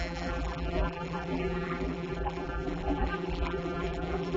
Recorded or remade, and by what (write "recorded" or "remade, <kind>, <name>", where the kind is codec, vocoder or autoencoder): remade, vocoder, BigVGAN v2